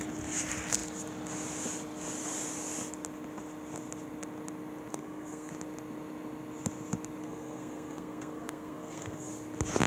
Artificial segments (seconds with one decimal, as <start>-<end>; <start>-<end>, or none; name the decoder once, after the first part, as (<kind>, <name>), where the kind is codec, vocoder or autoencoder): 4.9-5.5 (codec, SNAC); 7.2-9.3

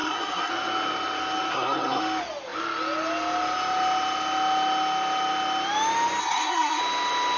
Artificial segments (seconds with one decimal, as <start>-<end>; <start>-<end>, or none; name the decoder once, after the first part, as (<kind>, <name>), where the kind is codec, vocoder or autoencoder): 0.0-0.5 (codec, SNAC); 1.5-2.0; 6.2-6.8